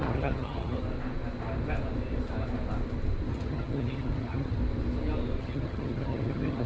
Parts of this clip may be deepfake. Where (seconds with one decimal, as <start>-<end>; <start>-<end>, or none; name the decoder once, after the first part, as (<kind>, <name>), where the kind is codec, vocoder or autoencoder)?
0.0-0.8 (vocoder, HiFi-GAN); 3.3-4.6; 5.4-6.7